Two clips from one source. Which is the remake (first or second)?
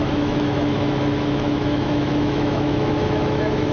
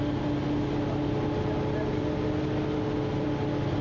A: first